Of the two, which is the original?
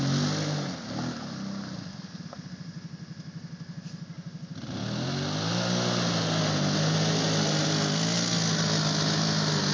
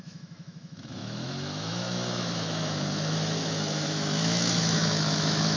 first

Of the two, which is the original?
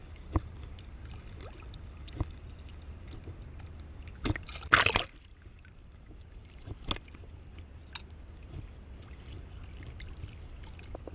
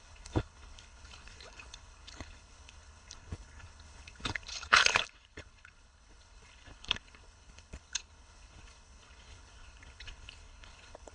first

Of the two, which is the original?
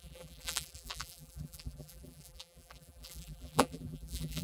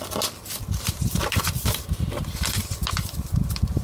second